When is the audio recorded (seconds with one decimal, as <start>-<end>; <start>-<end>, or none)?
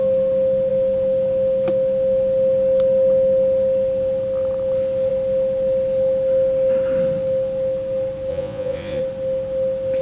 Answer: 0.0-8.3; 9.0-10.0